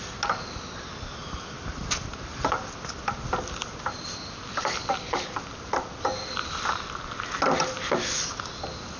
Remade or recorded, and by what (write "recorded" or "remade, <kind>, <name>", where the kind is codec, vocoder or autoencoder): recorded